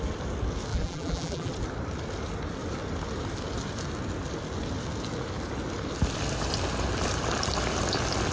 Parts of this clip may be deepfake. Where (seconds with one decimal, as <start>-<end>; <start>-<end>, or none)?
0.7-1.5